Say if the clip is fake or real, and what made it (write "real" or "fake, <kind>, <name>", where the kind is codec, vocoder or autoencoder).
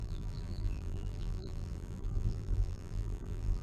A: fake, vocoder, BigVGAN v2